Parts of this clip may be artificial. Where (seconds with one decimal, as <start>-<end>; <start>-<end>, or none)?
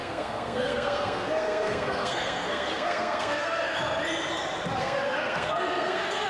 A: 0.0-3.8; 4.8-6.3